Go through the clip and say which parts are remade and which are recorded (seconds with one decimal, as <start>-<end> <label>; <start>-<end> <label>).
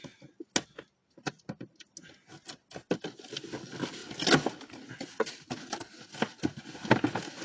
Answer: 0.0-7.4 recorded